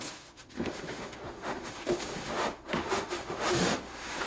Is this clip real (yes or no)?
no